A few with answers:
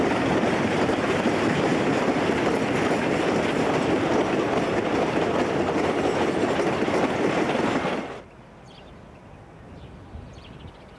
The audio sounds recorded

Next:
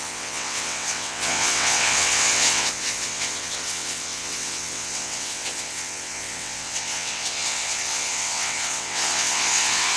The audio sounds remade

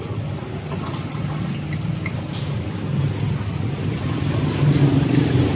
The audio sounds recorded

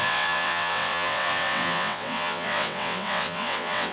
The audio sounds remade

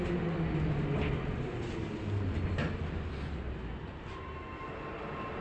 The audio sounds recorded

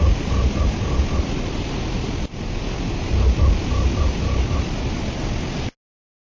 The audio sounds recorded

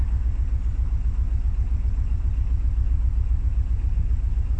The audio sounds recorded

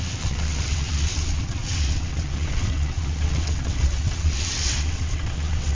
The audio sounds remade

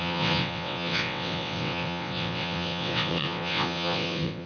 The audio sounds remade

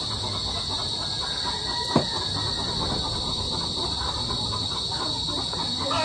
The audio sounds recorded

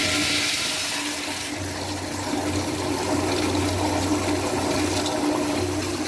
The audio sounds recorded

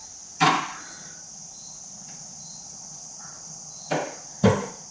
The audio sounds recorded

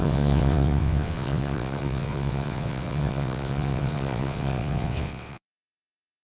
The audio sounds remade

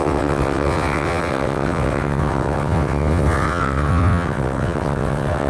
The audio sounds remade